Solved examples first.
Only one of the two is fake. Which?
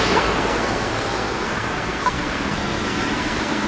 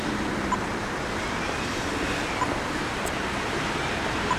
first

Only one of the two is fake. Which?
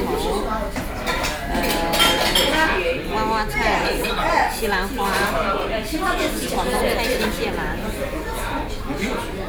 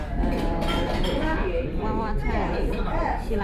second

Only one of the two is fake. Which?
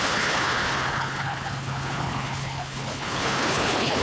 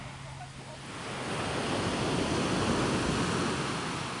first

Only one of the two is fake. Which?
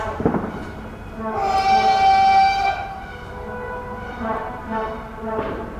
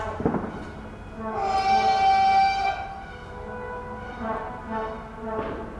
first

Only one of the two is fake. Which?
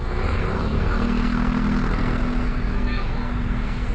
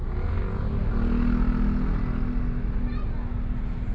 first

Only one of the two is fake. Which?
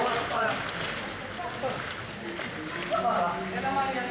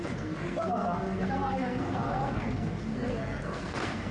second